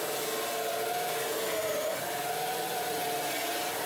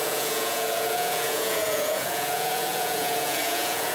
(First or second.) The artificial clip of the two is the second